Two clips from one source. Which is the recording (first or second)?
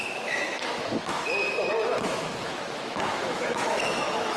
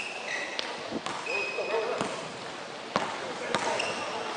second